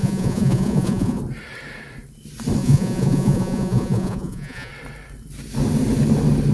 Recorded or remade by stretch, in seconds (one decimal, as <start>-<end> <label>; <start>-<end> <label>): 0.0-1.2 remade; 1.2-2.6 recorded; 2.6-4.7 remade; 4.7-6.5 recorded